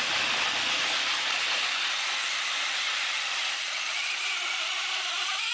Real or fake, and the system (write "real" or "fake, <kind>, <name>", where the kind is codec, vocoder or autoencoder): real